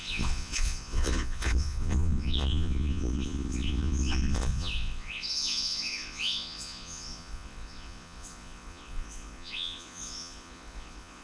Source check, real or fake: fake